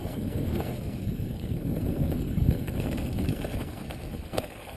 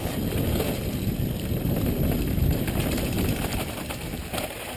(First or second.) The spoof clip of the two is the first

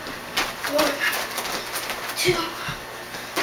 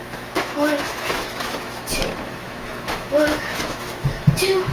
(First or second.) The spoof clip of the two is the second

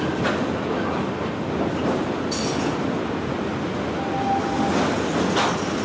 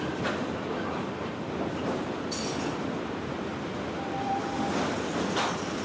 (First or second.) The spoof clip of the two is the second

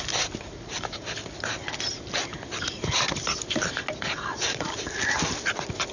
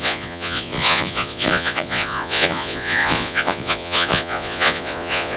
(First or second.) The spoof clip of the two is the second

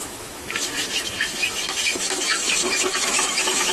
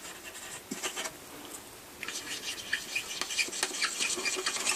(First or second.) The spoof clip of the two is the first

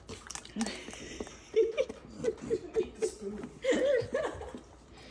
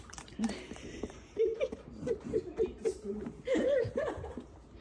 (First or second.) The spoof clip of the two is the second